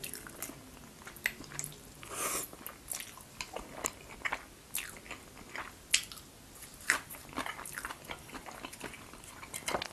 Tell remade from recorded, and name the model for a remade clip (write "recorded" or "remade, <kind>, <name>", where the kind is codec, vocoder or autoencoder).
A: recorded